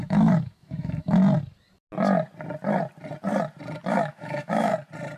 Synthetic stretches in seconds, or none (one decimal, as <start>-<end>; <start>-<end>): 0.0-1.2; 3.9-4.7